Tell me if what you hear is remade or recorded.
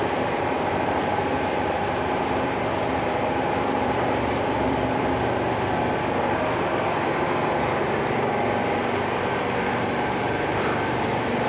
remade